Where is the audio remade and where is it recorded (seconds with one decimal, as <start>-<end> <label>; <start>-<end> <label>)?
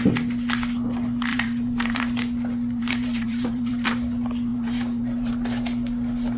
0.0-1.3 recorded; 1.3-2.0 remade; 2.0-2.8 recorded; 2.8-3.9 remade; 3.9-4.5 recorded; 4.5-5.3 remade; 5.3-6.4 recorded